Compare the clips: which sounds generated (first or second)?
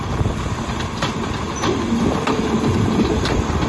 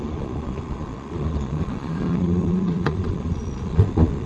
second